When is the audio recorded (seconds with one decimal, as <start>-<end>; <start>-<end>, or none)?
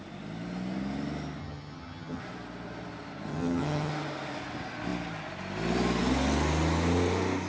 0.0-1.4; 2.2-3.3; 3.9-7.5